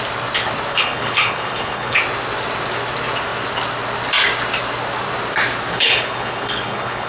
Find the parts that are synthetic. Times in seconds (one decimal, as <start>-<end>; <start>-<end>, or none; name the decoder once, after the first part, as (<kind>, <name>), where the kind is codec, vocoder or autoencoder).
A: 0.7-2.0 (codec, HILCodec); 5.7-7.1